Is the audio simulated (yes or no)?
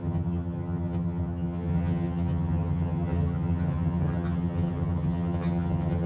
yes